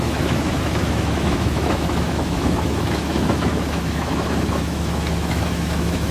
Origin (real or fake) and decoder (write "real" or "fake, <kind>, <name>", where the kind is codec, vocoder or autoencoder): fake, autoencoder, DAC-VAE